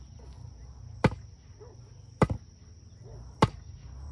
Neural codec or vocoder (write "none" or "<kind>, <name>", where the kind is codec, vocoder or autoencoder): none